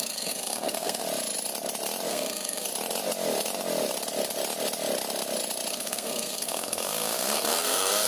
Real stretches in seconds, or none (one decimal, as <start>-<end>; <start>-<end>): 1.0-2.1; 2.7-5.7

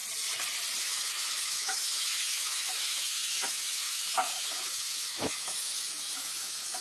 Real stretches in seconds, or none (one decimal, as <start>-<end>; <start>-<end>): 0.0-0.8

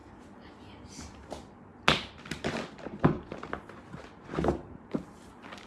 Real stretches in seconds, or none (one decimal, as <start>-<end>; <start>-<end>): 0.0-5.7

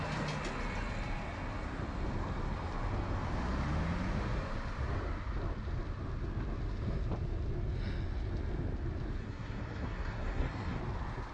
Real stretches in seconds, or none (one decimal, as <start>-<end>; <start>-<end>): 0.0-9.2; 10.8-11.3

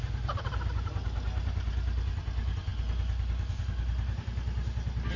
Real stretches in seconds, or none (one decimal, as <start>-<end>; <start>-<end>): 0.0-5.2

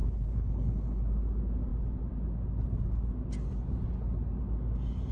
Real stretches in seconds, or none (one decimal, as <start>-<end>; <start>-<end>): 1.0-5.1

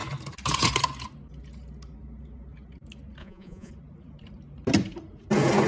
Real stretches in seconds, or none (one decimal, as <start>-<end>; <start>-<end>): 0.0-3.2; 3.7-5.7

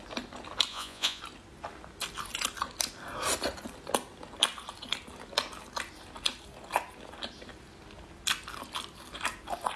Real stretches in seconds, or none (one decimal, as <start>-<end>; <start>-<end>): 0.0-0.7; 1.2-9.8